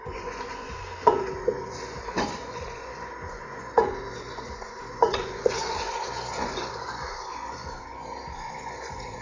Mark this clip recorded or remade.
remade